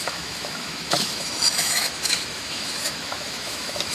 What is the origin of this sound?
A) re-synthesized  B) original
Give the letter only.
A